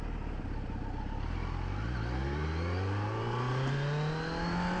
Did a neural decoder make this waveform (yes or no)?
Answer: no